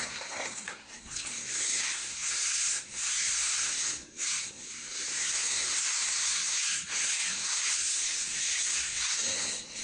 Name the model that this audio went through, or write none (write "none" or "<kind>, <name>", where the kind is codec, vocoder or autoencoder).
codec, SNAC